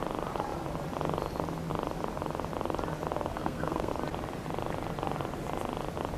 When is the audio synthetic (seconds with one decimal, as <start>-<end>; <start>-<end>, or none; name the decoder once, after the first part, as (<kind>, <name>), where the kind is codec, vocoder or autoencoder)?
3.3-3.9 (codec, SNAC)